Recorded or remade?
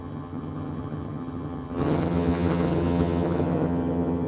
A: remade